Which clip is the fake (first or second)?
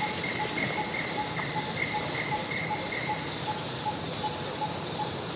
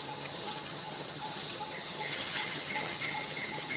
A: second